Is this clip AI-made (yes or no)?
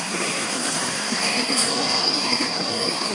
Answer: yes